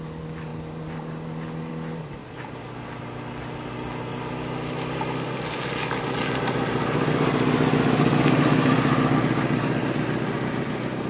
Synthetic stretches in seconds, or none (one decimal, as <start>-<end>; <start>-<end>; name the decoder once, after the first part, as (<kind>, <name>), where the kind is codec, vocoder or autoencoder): none